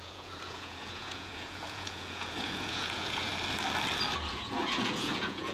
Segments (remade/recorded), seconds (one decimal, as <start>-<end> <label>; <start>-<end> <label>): 0.0-3.3 remade; 3.3-4.3 recorded; 4.3-5.5 remade